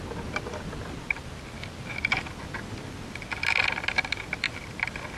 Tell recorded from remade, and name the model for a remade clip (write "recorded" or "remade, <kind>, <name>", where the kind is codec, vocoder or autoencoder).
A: recorded